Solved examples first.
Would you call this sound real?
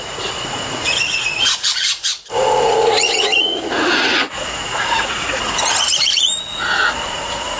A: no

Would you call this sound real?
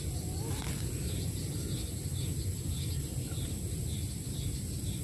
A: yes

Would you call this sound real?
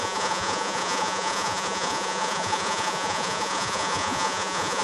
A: no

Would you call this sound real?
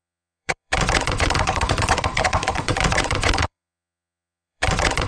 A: no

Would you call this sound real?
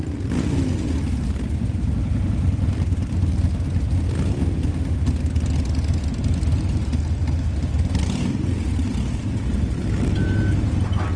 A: yes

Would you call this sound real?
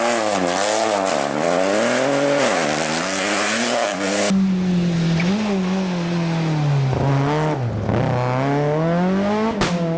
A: yes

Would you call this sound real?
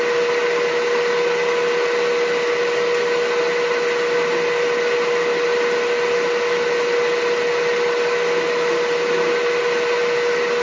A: yes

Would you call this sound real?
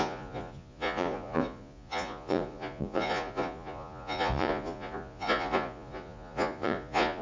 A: no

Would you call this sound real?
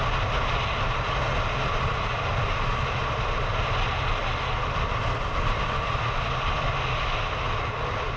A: yes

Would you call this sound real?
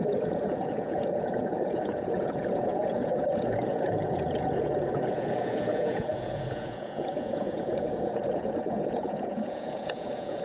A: no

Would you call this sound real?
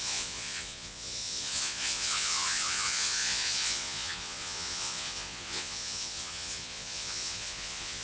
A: no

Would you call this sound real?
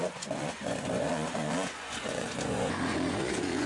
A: no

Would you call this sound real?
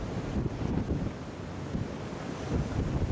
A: yes